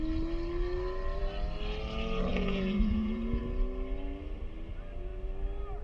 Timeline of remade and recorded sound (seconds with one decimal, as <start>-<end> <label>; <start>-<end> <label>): 0.0-2.3 recorded; 2.3-3.4 remade; 3.4-5.8 recorded